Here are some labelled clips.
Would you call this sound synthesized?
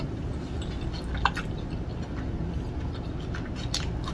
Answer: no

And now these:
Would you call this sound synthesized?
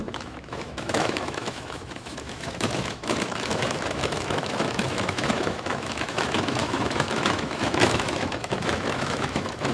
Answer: yes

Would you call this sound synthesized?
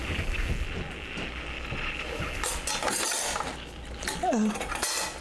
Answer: no